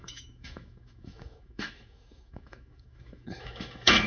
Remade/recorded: remade